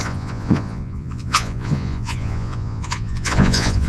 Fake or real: fake